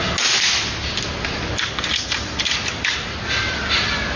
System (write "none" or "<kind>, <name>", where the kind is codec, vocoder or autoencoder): none